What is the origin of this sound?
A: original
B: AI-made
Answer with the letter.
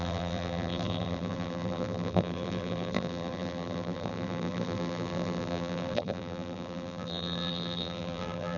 B